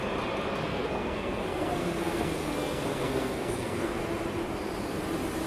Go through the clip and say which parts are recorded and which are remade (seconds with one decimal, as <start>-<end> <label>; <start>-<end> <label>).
0.0-0.7 recorded; 0.7-4.0 remade; 4.0-5.5 recorded